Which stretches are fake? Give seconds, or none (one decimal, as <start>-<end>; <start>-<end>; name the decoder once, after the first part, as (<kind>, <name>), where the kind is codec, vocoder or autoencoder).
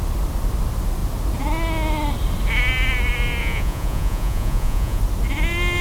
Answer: 3.4-5.0 (vocoder, Vocos)